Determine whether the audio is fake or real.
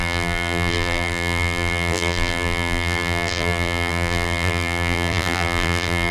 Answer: fake